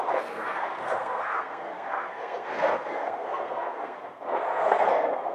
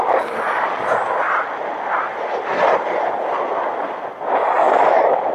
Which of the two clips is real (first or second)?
second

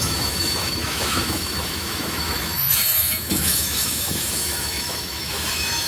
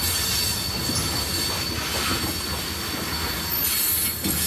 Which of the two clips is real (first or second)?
second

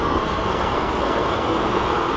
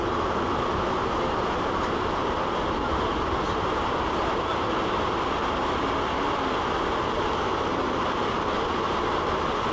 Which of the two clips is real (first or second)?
second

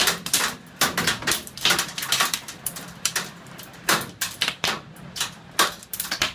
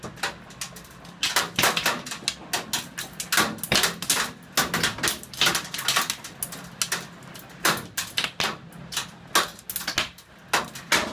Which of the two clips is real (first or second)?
second